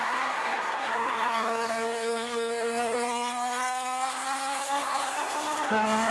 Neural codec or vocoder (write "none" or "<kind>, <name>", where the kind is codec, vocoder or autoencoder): codec, SNAC